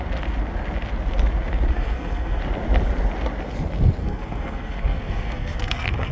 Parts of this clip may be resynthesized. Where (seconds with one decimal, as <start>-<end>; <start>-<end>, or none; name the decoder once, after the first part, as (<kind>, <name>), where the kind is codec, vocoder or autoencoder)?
1.7-2.4 (codec, SNAC); 4.0-6.1